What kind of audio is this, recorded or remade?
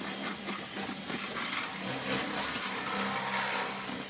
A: recorded